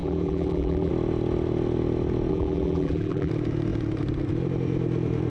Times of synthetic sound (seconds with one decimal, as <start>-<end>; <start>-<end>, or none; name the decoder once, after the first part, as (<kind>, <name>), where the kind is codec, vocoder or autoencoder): 0.0-0.9 (vocoder, BigVGAN v2); 2.3-3.3

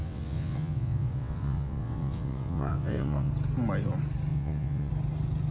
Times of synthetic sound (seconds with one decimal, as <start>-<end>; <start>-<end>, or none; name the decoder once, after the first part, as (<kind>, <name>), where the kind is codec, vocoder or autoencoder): 0.0-3.3 (vocoder, WaveNeXt); 4.3-4.9

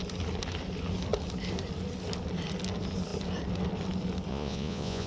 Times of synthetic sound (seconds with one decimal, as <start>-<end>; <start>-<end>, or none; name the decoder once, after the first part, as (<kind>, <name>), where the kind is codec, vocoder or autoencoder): 4.3-5.1 (vocoder, Vocos)

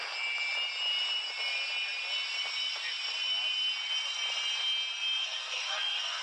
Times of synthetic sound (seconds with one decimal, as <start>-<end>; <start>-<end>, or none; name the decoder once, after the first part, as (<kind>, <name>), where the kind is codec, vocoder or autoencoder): 5.2-6.2 (codec, SNAC)

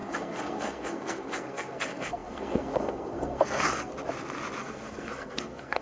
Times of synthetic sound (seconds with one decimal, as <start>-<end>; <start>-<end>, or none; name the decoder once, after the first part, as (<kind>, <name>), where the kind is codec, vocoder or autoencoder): 0.0-3.9 (codec, SNAC); 4.6-5.8